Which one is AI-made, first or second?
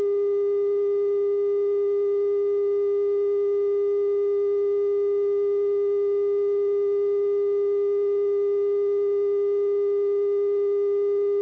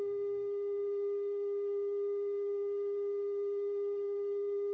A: second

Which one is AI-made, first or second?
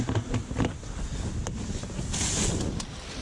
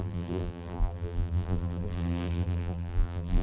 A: second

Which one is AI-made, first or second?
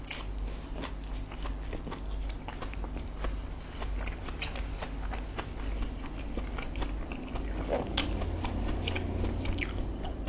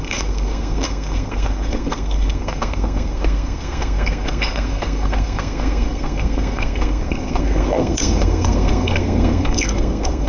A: second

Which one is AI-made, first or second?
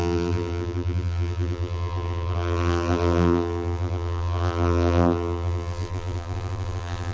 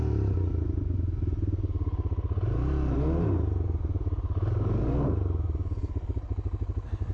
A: first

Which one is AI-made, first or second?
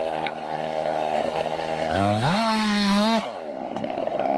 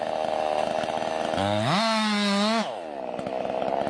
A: first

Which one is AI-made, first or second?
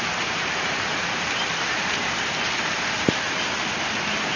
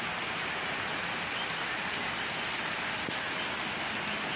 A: first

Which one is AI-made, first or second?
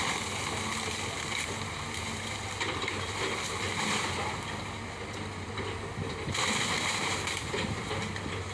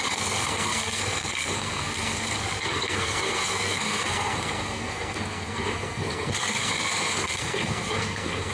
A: second